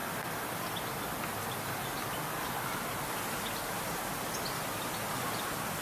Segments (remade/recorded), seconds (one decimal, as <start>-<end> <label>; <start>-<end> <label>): 0.0-5.8 recorded